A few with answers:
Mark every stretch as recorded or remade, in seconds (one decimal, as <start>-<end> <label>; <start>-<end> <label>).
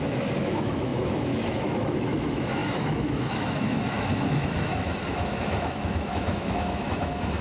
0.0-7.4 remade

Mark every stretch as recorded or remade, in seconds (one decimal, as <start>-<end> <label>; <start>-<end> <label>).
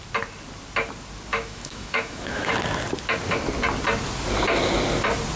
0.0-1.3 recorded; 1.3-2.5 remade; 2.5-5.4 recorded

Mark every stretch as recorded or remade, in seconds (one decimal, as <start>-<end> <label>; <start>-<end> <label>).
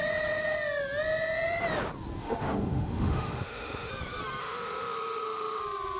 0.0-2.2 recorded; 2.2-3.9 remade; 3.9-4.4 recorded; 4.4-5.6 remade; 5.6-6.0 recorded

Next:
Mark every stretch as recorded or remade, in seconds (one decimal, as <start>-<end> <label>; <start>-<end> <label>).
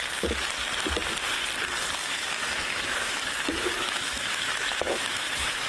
0.0-2.0 recorded; 2.0-5.7 remade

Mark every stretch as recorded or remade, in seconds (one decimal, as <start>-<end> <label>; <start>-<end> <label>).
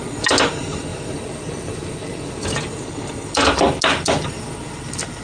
0.0-5.2 recorded